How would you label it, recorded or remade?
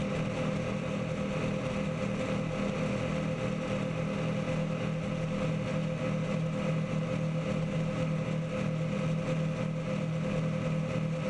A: recorded